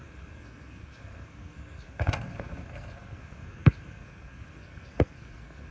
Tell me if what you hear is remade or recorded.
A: remade